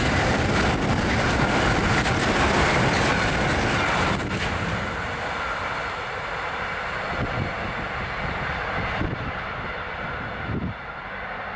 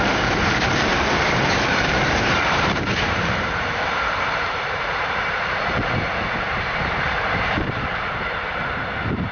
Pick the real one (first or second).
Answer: first